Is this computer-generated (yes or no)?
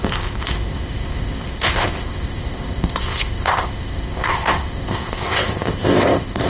yes